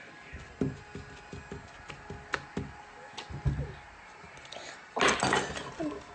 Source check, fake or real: real